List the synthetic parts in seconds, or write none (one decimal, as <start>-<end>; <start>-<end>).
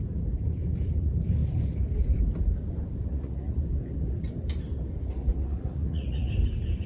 3.1-3.6; 5.3-6.3